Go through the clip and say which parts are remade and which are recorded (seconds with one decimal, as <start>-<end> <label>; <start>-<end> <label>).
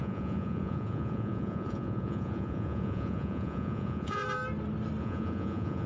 0.0-4.2 remade; 4.2-5.0 recorded; 5.0-5.9 remade